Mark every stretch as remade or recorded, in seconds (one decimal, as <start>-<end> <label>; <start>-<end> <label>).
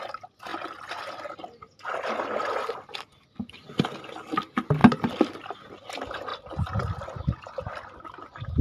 0.0-4.8 recorded; 4.8-5.5 remade; 5.5-8.6 recorded